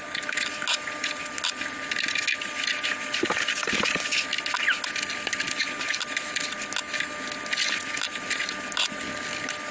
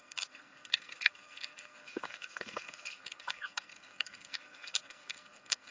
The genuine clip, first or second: first